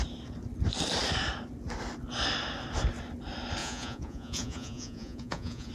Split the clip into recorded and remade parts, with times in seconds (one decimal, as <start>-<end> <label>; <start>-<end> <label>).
0.0-3.6 recorded; 3.6-5.7 remade

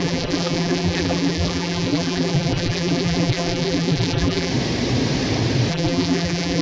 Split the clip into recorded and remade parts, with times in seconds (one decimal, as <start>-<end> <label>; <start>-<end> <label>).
0.0-4.5 remade; 4.5-5.7 recorded; 5.7-6.6 remade

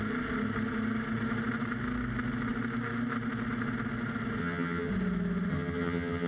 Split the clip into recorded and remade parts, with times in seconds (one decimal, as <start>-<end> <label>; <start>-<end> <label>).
0.0-4.4 recorded; 4.4-4.9 remade; 4.9-5.5 recorded; 5.5-6.3 remade

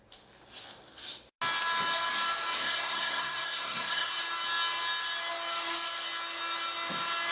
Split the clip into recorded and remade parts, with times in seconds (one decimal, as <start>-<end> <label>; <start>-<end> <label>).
0.0-2.6 recorded; 2.6-4.1 remade; 4.1-7.3 recorded

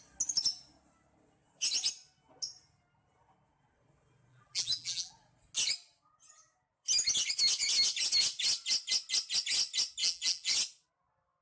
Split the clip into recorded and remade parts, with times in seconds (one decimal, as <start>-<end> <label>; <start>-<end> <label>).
0.0-4.3 recorded; 4.3-5.1 remade; 5.1-10.0 recorded; 10.0-10.5 remade; 10.5-11.4 recorded

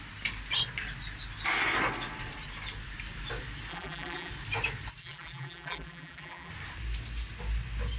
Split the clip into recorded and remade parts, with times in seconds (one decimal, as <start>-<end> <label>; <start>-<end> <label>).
0.0-3.7 recorded; 3.7-4.3 remade; 4.3-5.0 recorded; 5.0-6.5 remade; 6.5-8.0 recorded